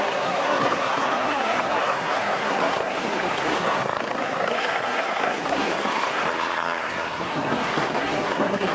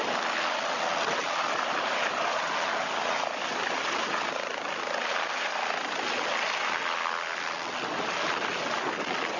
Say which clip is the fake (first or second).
first